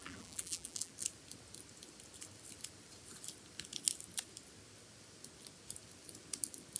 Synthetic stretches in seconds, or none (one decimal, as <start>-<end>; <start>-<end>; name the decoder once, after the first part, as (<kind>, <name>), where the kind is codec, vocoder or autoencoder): 0.0-0.9 (vocoder, BigVGAN v2)